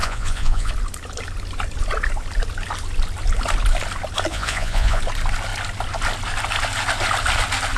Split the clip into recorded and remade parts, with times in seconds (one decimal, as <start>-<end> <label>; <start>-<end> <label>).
0.0-0.7 remade; 0.7-4.3 recorded; 4.3-5.0 remade; 5.0-7.8 recorded